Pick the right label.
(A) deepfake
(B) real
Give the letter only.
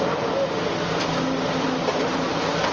B